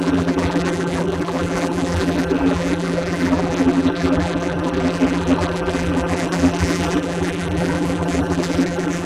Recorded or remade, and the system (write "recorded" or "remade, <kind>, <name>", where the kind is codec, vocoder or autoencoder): remade, vocoder, BigVGAN v2